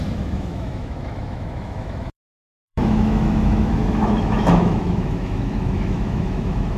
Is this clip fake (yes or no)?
yes